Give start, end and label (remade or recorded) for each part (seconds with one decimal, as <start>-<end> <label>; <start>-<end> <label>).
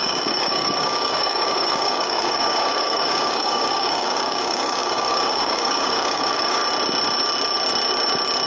0.0-6.6 remade; 6.6-8.5 recorded